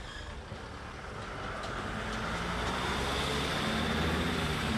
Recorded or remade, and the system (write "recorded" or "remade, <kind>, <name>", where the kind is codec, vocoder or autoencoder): recorded